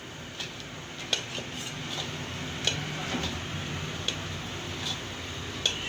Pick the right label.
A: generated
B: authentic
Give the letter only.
B